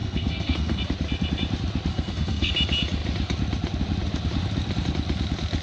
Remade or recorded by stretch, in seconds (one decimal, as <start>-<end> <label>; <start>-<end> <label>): 0.0-0.8 remade; 0.8-1.9 recorded; 1.9-2.5 remade; 2.5-5.6 recorded